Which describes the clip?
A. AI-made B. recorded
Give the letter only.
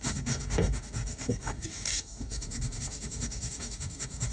A